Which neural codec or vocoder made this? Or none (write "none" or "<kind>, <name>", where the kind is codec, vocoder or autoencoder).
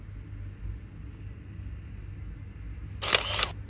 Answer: none